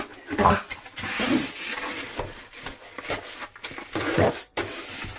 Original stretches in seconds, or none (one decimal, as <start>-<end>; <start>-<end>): 0.7-3.7